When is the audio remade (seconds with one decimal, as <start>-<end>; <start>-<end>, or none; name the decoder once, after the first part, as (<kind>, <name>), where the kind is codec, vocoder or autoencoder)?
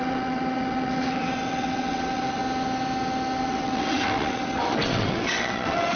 0.0-2.4 (vocoder, WaveNeXt); 3.4-6.0